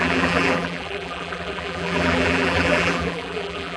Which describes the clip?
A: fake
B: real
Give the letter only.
A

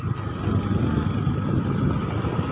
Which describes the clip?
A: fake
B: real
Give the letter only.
B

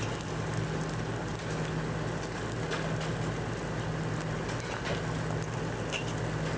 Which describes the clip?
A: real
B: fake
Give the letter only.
A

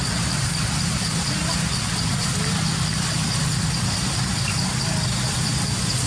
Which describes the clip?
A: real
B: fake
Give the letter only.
A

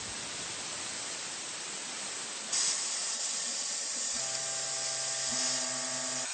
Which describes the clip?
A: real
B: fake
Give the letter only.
B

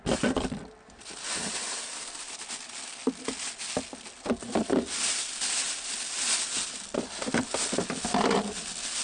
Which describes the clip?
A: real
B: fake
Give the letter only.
A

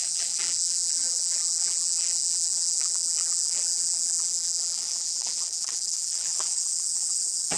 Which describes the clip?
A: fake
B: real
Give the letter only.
A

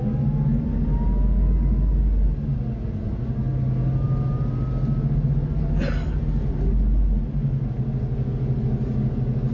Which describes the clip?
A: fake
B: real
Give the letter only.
B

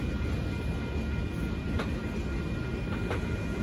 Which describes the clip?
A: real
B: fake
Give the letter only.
A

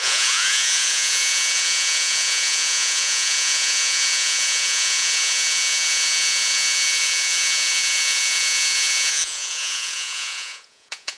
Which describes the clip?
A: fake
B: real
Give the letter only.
A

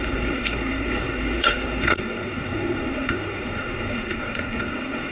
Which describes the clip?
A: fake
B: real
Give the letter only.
A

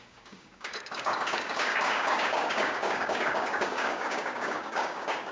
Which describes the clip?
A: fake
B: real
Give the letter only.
A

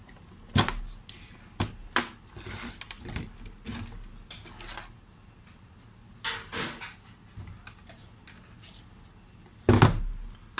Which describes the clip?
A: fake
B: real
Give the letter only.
B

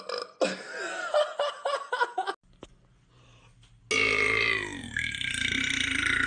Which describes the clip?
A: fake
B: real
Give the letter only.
B